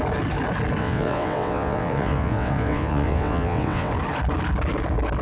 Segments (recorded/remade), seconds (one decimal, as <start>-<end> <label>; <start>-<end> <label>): 0.0-0.8 recorded; 0.8-3.9 remade; 3.9-5.2 recorded